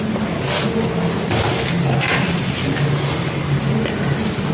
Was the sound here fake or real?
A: real